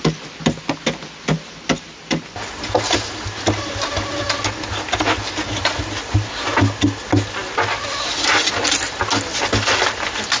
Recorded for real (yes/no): yes